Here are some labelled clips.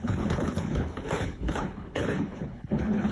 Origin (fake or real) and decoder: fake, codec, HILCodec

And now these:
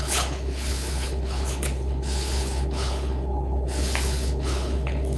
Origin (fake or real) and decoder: fake, codec, HILCodec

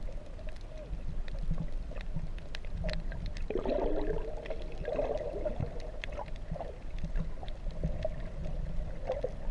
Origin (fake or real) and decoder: real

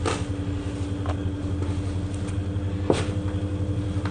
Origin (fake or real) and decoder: real